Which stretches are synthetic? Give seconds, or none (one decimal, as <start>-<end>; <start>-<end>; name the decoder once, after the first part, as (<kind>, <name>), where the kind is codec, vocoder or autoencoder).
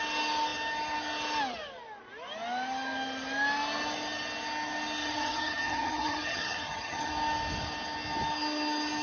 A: 5.0-7.1 (vocoder, HiFi-GAN)